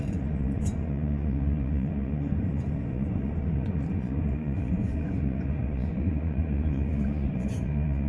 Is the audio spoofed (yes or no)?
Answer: yes